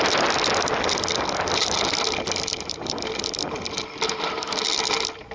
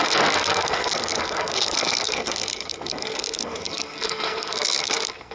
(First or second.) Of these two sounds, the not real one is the second